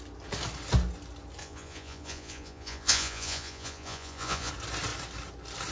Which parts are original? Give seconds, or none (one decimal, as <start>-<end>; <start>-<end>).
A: 0.0-1.4; 4.5-5.7